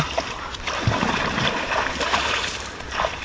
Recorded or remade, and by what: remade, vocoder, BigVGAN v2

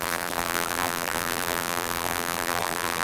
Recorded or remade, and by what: remade, vocoder, BigVGAN v2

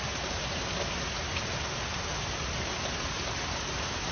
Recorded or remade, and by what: recorded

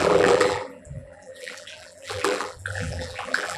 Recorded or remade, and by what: remade, vocoder, BigVGAN v2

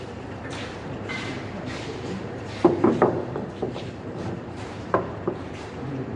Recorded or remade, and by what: remade, vocoder, BigVGAN v2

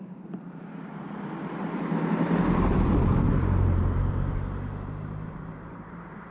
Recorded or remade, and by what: remade, vocoder, BigVGAN v2